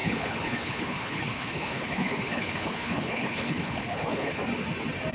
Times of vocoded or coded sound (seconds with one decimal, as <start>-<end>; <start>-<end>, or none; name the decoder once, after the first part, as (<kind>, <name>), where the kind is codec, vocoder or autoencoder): 0.0-4.4 (codec, HILCodec)